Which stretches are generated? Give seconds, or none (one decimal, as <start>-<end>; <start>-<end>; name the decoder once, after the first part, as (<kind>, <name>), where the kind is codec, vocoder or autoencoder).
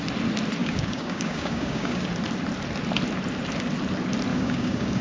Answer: 0.6-2.0 (codec, DAC); 4.3-5.0